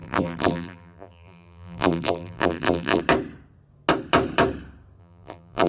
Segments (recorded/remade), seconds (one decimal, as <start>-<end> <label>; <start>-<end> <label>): 0.0-3.0 remade; 3.0-5.0 recorded; 5.0-5.7 remade